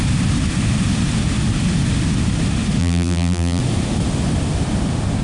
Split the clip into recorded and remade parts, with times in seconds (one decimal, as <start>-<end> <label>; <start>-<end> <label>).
0.0-2.8 recorded; 2.8-3.6 remade; 3.6-5.2 recorded